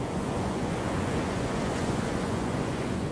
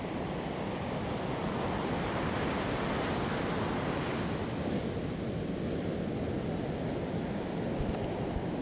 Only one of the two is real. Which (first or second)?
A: second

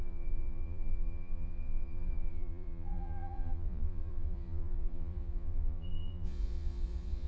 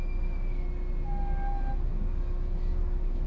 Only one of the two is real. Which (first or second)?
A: second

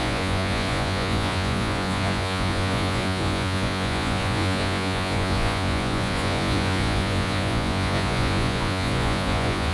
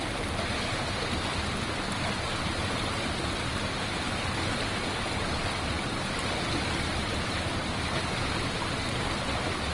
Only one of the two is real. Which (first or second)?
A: second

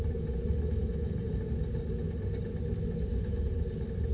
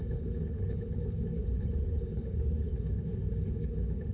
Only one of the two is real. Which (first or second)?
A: first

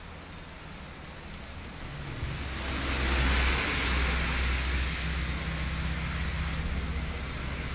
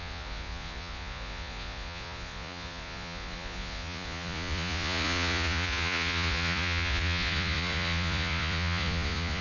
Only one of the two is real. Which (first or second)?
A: first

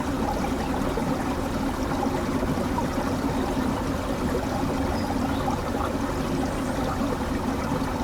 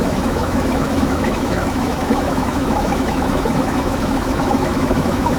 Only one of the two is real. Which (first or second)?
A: first